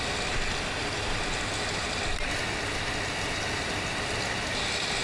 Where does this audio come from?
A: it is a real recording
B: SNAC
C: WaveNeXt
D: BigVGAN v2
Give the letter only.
A